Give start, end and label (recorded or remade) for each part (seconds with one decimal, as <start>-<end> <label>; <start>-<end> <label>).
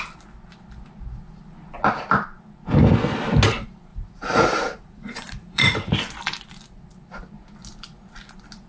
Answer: 0.0-3.9 recorded; 3.9-5.9 remade; 5.9-8.7 recorded